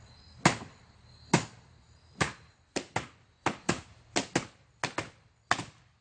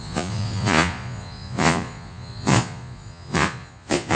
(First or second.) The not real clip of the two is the second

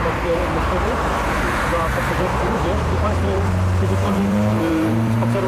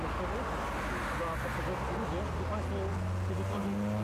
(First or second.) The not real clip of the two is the first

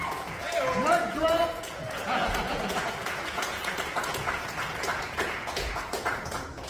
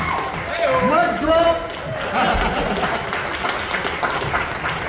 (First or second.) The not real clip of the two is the first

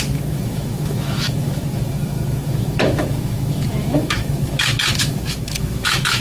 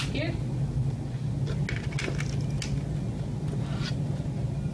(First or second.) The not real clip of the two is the first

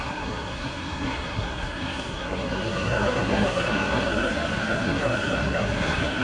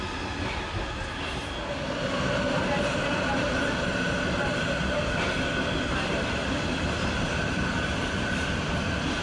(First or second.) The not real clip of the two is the first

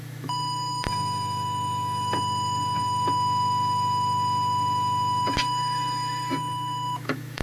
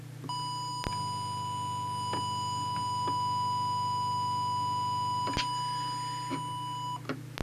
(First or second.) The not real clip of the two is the first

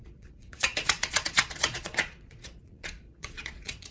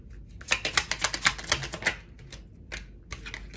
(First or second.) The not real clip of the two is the first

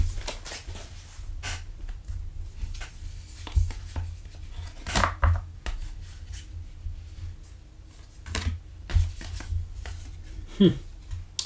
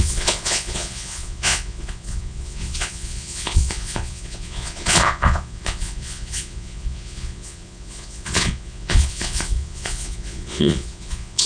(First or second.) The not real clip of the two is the second